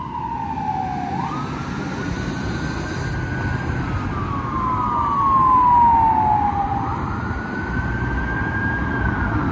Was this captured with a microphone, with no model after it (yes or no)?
yes